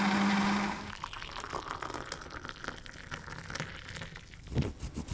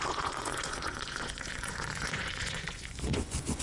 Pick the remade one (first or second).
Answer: second